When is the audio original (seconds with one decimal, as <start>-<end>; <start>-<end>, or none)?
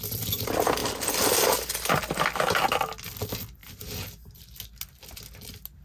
0.0-5.8